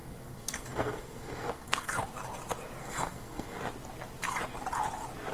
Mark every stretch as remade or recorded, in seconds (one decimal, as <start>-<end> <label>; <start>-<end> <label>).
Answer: 0.0-1.9 remade; 1.9-2.8 recorded; 2.8-3.6 remade; 3.6-5.3 recorded